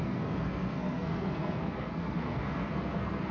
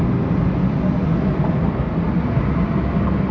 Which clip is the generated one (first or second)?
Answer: first